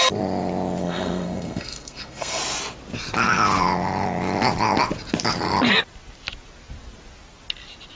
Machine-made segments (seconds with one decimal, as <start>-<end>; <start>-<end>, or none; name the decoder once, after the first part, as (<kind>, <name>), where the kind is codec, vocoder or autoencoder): 0.8-2.4 (codec, SNAC)

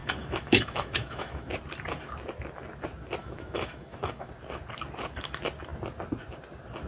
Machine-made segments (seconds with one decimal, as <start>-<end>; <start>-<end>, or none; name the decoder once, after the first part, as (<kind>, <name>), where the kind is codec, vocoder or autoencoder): 0.0-1.5 (autoencoder, DAC-VAE); 3.2-4.3

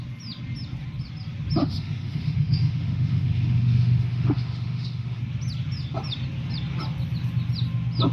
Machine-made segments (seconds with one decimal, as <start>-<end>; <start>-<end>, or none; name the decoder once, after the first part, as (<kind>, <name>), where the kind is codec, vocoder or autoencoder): 1.6-5.2 (autoencoder, DAC-VAE)

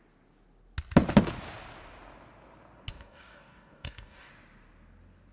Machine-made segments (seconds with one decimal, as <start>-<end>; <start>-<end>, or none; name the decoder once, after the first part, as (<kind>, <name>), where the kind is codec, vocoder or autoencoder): 2.9-4.3 (codec, DAC)

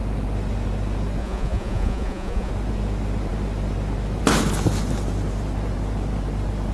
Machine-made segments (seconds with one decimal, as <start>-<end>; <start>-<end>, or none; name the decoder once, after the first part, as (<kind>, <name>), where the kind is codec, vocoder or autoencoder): 1.2-2.5 (vocoder, Vocos)